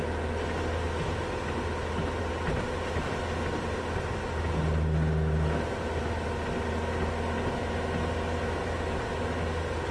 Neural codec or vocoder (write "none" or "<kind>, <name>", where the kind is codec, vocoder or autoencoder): none